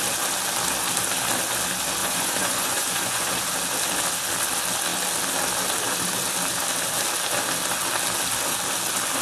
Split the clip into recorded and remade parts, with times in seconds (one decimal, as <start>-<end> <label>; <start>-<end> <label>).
0.0-2.0 recorded; 2.0-3.3 remade; 3.3-9.2 recorded